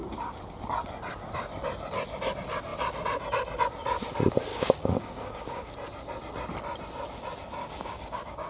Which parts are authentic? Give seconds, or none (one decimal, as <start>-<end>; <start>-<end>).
0.0-4.5; 5.7-7.6